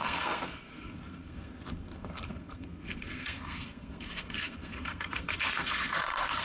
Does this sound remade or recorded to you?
remade